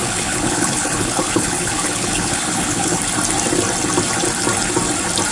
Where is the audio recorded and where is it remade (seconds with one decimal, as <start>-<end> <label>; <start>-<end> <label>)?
0.0-3.0 remade; 3.0-5.3 recorded